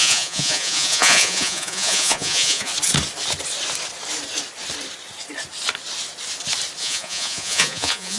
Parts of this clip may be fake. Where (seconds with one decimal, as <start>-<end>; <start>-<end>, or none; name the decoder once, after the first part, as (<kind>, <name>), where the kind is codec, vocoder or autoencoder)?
0.0-2.7 (vocoder, Vocos); 6.8-8.2